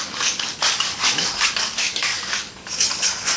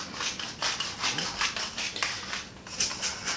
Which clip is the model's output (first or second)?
first